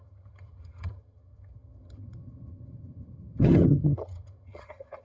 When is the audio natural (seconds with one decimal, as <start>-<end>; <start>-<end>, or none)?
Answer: none